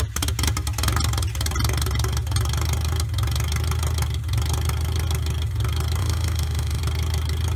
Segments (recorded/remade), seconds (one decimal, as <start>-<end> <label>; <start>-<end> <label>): 0.0-6.0 recorded; 6.0-6.8 remade; 6.8-7.6 recorded